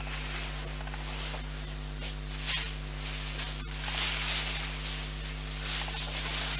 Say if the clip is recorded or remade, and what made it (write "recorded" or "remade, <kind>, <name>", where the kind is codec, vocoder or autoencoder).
recorded